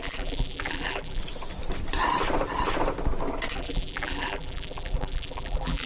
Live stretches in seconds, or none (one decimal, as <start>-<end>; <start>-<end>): 1.2-3.5